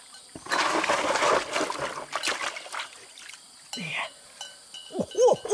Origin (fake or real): real